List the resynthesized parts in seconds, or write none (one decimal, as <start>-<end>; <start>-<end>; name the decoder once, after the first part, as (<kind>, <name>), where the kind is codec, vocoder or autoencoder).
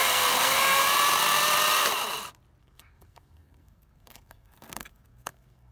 0.0-0.8 (codec, SNAC); 2.6-5.7